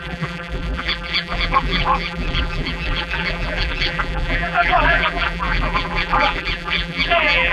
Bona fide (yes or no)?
no